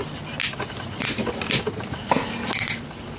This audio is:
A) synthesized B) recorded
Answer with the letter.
B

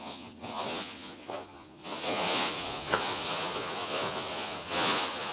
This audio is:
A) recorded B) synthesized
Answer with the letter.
B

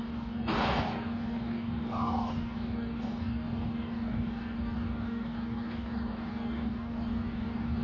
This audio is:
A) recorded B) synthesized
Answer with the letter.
B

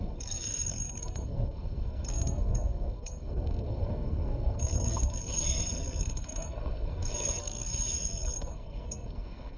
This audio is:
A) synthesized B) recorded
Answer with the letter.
A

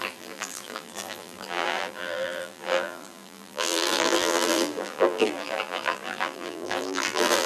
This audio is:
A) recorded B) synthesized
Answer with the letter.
B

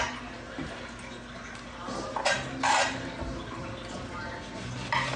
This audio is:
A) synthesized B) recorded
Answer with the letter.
B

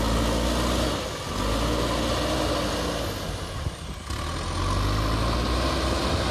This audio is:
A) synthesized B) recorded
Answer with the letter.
B